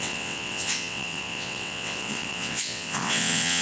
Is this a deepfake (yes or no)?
yes